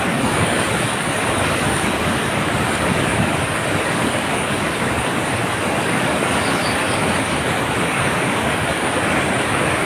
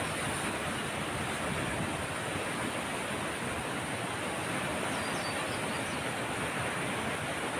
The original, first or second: second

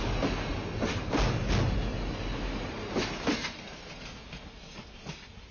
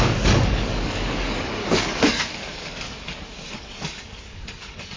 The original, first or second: first